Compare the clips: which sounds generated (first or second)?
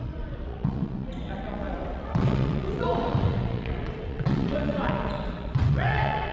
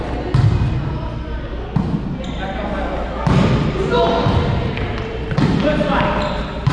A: first